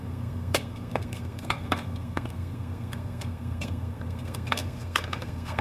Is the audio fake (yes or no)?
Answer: yes